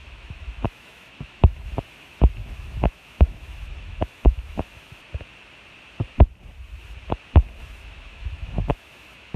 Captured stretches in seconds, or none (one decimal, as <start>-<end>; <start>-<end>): 1.7-2.4; 5.0-7.6